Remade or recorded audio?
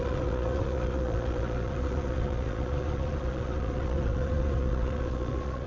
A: remade